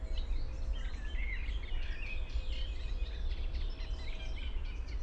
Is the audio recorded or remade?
recorded